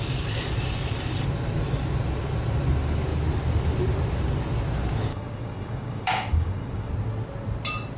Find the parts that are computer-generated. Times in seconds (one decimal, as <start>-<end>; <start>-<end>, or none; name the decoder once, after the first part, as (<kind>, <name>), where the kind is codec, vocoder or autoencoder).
5.1-6.9 (codec, DAC)